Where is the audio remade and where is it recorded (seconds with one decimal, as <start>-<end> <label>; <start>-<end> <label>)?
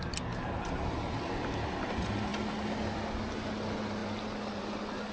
0.0-5.1 recorded